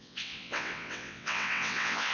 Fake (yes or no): yes